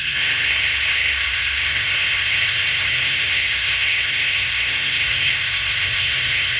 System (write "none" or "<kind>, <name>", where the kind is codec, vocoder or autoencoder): codec, SNAC